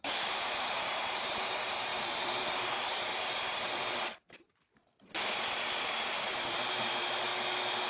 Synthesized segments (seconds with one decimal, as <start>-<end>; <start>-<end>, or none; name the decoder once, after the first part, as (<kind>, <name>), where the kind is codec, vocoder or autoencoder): 0.0-3.7 (vocoder, BigVGAN v2); 6.1-7.3